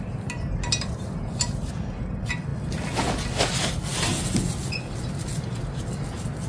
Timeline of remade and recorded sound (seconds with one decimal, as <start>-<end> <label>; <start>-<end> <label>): 0.0-6.5 recorded